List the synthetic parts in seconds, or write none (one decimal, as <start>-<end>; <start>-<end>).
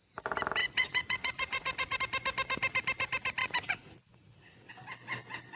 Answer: 0.6-2.0; 3.4-4.7